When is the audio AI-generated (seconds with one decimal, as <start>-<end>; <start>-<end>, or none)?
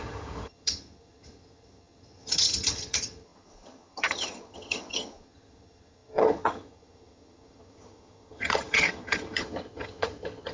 0.0-10.5